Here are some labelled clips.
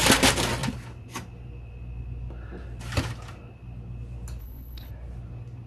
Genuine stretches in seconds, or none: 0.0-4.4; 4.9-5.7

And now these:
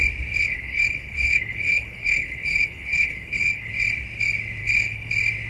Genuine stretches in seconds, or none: 0.0-0.4; 3.7-4.6; 5.1-5.5